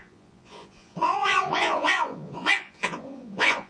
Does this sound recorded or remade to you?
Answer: remade